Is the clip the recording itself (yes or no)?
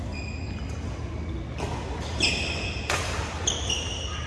yes